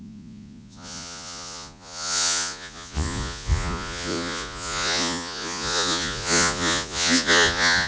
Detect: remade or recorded remade